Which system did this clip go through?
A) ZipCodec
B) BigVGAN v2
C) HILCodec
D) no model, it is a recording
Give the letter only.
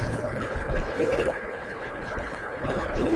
C